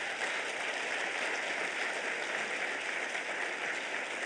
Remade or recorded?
recorded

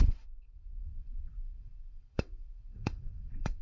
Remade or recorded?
remade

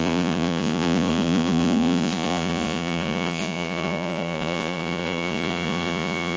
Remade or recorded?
remade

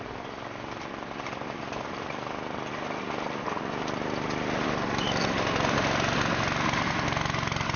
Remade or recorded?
recorded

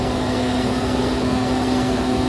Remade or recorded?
remade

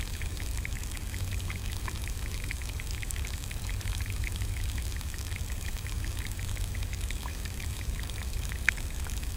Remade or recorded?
remade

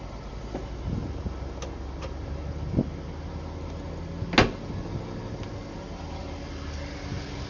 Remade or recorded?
recorded